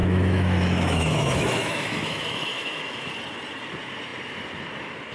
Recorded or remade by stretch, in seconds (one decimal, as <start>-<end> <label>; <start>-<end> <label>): 0.0-3.1 remade; 3.1-5.1 recorded